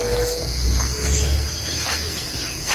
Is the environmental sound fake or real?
fake